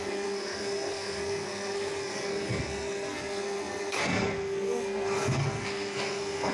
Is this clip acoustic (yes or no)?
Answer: no